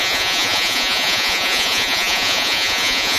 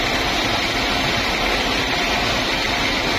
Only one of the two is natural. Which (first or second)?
second